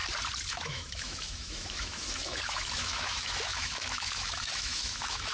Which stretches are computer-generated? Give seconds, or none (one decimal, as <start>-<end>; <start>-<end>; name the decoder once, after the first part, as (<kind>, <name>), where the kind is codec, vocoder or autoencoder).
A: 0.5-5.3 (autoencoder, DAC-VAE)